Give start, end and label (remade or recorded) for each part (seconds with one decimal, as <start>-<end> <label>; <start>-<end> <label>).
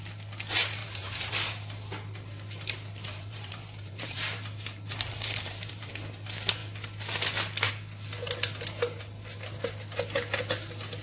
0.0-0.8 recorded; 0.8-1.3 remade; 1.3-3.0 recorded; 3.0-5.9 remade; 5.9-11.0 recorded